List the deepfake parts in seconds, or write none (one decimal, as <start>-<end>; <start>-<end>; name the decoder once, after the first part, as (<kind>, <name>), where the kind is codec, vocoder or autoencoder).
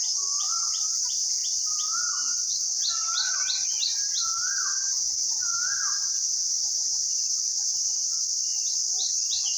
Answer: none